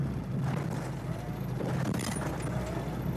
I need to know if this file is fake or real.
real